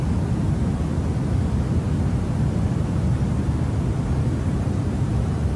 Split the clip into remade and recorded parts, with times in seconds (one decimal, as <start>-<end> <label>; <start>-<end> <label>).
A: 0.0-5.6 recorded